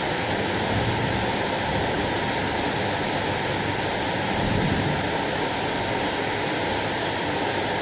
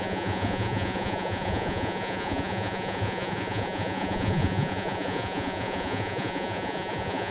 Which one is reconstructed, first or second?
second